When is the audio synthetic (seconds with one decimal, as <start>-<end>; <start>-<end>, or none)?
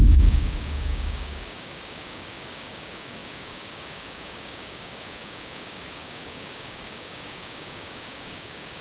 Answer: 0.0-8.8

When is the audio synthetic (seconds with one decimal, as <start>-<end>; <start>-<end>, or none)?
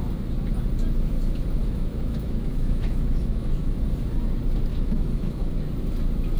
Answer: 1.6-3.7; 4.7-5.5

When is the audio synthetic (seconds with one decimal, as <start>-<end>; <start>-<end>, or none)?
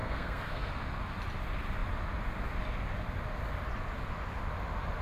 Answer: 0.0-0.7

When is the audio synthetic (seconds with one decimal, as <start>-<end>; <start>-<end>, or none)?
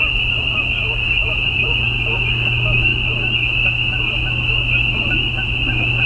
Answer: 1.2-1.7